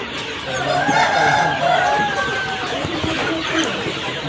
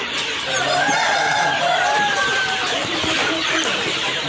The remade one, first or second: second